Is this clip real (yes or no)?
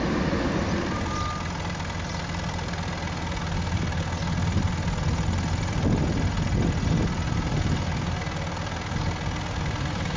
yes